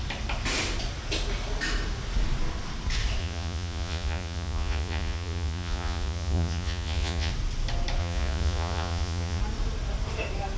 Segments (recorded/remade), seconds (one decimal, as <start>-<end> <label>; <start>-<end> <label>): 0.0-3.2 recorded; 3.2-7.3 remade; 7.3-8.0 recorded; 8.0-9.4 remade; 9.4-10.6 recorded